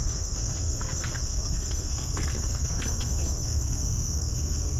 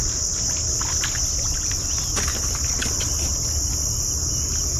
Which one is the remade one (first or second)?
first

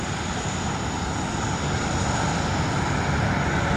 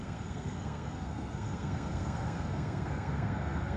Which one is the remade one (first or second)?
second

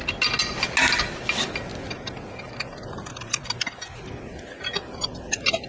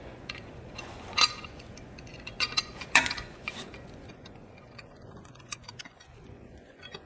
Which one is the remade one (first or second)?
second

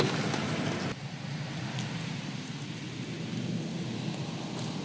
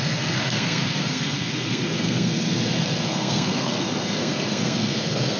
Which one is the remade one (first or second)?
second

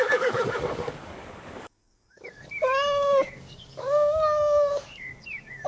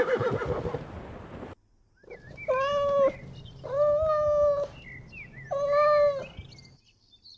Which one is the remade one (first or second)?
first